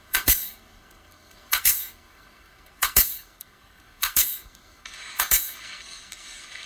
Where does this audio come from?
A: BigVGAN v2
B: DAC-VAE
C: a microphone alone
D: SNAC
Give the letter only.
D